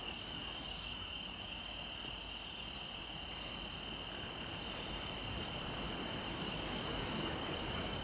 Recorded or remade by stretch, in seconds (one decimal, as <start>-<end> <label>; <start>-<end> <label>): 0.0-1.6 remade; 1.6-6.4 recorded; 6.4-8.0 remade